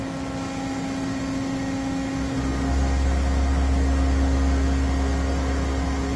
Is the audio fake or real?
real